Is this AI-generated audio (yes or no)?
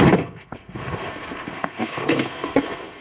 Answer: yes